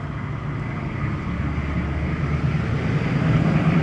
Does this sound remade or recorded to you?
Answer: recorded